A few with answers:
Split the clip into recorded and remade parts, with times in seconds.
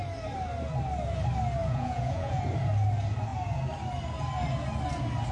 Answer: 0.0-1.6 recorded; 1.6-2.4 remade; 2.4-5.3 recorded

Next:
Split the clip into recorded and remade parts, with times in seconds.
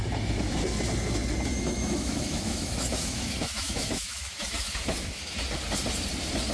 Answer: 0.0-1.5 recorded; 1.5-5.4 remade; 5.4-6.5 recorded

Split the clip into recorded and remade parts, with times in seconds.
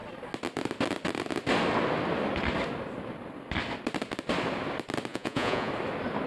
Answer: 0.0-5.1 recorded; 5.1-5.7 remade; 5.7-6.3 recorded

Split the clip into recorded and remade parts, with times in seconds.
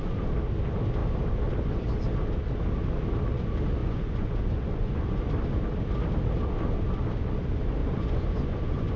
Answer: 0.0-3.8 recorded; 3.8-5.2 remade; 5.2-7.8 recorded; 7.8-9.0 remade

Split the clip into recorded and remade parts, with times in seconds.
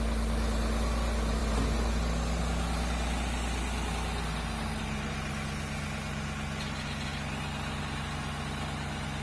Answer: 0.0-9.2 recorded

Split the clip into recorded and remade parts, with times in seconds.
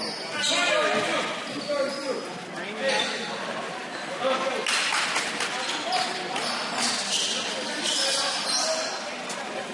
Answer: 0.0-9.7 recorded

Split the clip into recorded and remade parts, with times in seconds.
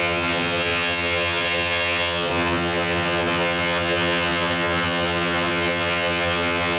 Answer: 0.0-6.8 remade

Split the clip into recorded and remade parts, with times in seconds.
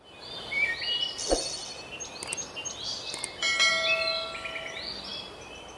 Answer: 0.0-5.8 recorded